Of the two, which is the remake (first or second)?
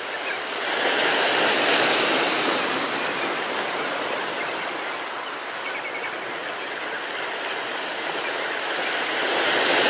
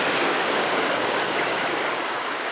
second